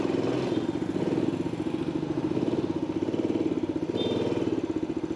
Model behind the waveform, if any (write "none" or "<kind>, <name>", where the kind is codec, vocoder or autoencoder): none